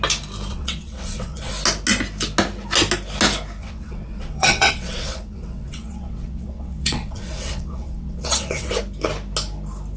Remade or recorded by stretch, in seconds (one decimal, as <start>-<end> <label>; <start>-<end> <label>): 0.0-0.5 recorded; 0.5-1.5 remade; 1.5-3.6 recorded; 3.6-8.7 remade; 8.7-10.0 recorded